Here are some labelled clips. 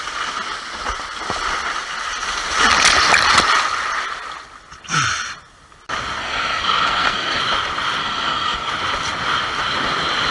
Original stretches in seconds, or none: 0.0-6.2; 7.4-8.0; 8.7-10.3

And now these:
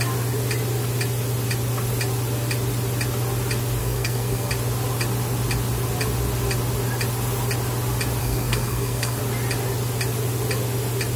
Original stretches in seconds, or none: 0.0-3.8; 4.5-8.2; 9.2-11.2

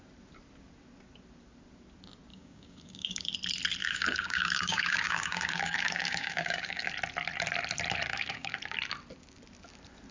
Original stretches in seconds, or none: 0.0-2.3; 3.3-3.8; 6.9-8.1; 8.6-10.1

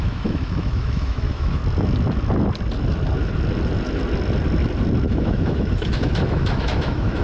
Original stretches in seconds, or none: 1.6-5.1

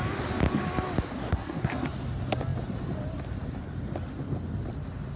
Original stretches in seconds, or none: 0.0-1.3; 1.9-5.2